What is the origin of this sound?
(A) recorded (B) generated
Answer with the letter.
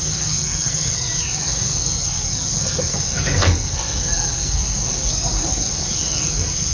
B